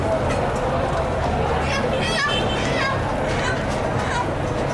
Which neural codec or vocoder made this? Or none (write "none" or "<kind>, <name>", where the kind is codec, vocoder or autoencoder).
none